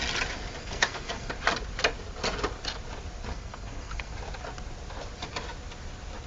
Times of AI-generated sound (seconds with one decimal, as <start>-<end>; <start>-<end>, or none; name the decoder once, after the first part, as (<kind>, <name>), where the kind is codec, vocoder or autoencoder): 0.6-1.3 (codec, SNAC); 3.3-4.1

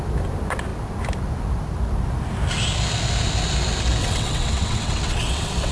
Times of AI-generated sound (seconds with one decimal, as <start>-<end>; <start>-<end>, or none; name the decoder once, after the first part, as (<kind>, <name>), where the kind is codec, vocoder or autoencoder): 4.0-5.7 (vocoder, WaveNeXt)